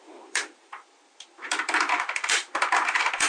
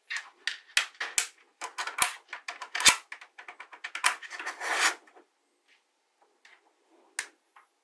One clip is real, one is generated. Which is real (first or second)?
second